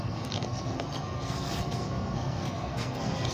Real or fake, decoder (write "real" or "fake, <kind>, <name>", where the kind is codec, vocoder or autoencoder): fake, codec, SNAC